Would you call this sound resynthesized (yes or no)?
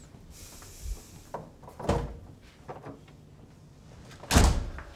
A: no